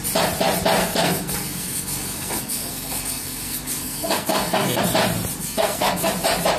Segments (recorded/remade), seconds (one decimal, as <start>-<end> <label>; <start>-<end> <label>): 0.0-0.8 recorded; 0.8-4.8 remade; 4.8-5.4 recorded; 5.4-6.1 remade; 6.1-6.6 recorded